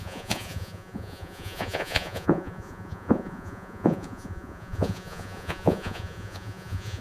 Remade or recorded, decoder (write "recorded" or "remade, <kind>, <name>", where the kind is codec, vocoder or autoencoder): remade, vocoder, Vocos